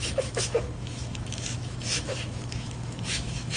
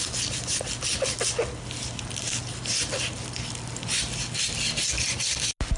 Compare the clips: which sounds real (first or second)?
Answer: second